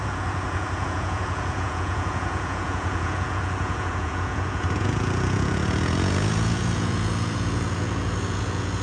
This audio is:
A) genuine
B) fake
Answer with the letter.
B